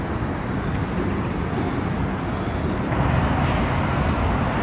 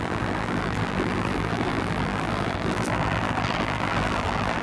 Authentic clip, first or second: first